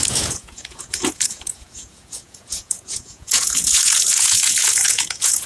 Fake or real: fake